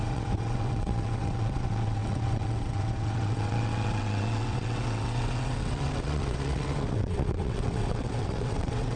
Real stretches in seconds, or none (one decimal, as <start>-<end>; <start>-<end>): none